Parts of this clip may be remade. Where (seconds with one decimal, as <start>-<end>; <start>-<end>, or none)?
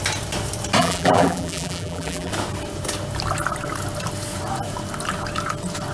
0.8-2.3